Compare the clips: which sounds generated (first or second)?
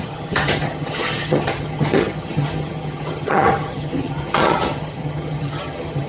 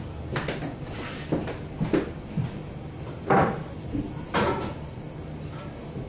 first